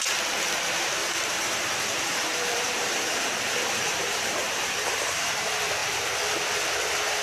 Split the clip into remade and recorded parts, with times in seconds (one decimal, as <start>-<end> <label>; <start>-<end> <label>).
0.0-1.0 recorded; 1.0-5.3 remade; 5.3-7.2 recorded